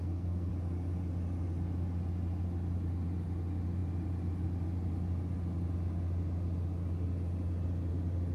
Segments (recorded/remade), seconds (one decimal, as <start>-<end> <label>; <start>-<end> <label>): 0.0-0.5 remade; 0.5-8.3 recorded